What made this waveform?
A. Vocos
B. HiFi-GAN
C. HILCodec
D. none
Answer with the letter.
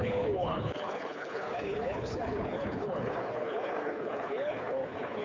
C